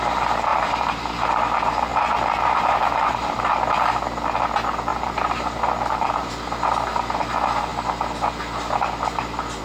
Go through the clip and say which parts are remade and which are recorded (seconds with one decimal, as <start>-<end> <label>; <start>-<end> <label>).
0.0-0.5 recorded; 0.5-1.0 remade; 1.0-1.9 recorded; 1.9-3.4 remade; 3.4-4.9 recorded; 4.9-6.3 remade; 6.3-9.6 recorded